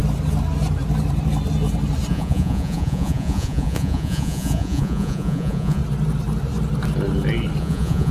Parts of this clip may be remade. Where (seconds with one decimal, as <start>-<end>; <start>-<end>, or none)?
2.1-5.8; 7.6-8.1